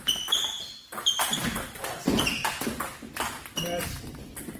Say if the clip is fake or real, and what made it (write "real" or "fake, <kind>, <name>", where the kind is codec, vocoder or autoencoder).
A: real